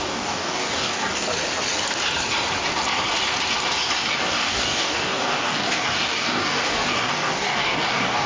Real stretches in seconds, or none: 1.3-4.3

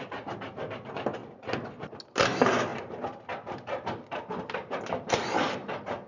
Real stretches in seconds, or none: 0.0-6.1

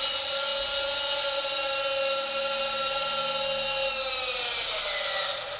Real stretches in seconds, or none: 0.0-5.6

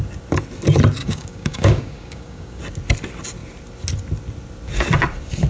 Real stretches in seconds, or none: 0.0-1.0; 2.6-5.5

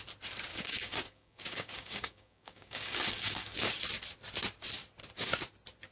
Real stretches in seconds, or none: 0.0-0.5; 3.8-5.9

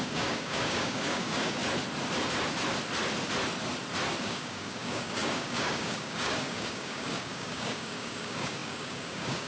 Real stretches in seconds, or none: 1.6-4.2

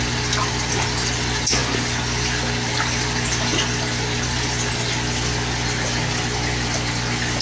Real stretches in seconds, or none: 0.0-7.4

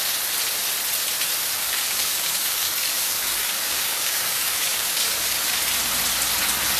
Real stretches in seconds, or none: 0.0-1.5; 5.6-6.8